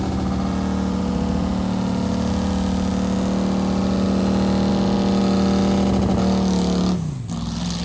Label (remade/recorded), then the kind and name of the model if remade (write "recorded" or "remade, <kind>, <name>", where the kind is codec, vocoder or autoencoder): recorded